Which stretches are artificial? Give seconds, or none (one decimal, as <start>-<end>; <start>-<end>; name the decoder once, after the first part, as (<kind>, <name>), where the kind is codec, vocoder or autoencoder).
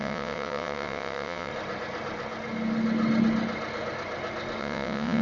0.0-1.5 (vocoder, WaveNeXt); 4.6-5.2